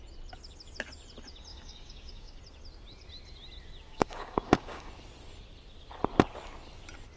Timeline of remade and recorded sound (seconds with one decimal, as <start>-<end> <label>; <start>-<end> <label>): 0.0-1.5 recorded; 1.5-2.4 remade; 2.4-3.9 recorded; 3.9-4.9 remade; 4.9-7.2 recorded